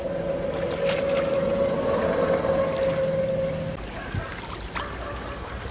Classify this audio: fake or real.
real